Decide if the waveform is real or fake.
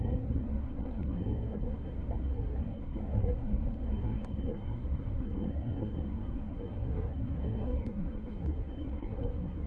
fake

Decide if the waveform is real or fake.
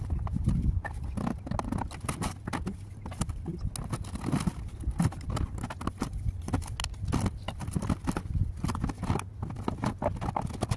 real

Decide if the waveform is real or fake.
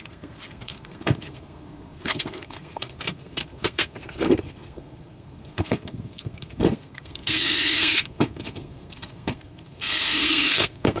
fake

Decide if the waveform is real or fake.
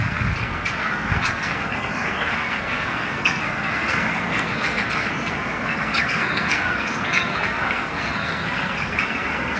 fake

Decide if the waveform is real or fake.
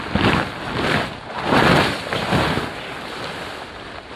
real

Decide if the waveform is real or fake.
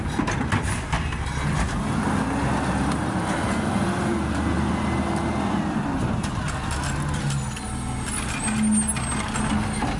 real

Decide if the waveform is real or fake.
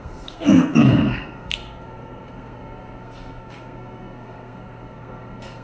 fake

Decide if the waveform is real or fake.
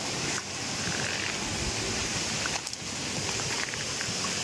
real